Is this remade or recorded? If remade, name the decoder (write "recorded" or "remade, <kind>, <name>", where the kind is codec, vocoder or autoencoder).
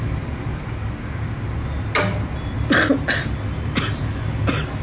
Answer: recorded